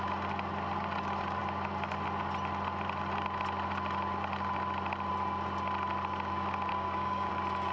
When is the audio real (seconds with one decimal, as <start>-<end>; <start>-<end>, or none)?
0.0-6.7; 7.3-7.7